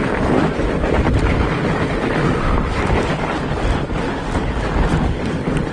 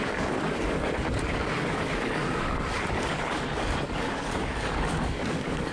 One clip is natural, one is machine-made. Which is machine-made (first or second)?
second